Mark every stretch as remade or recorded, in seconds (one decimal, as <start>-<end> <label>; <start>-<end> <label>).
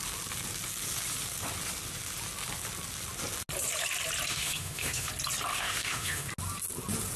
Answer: 0.0-4.3 recorded; 4.3-5.1 remade; 5.1-5.5 recorded; 5.5-6.3 remade; 6.3-7.2 recorded